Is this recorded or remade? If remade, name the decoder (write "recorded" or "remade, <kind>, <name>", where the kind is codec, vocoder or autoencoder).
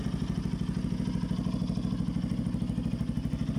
recorded